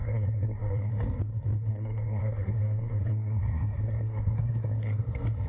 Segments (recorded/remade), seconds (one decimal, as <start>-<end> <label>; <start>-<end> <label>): 0.0-0.9 remade; 0.9-1.7 recorded; 1.7-5.0 remade; 5.0-5.5 recorded